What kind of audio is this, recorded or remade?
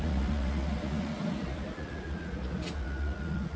remade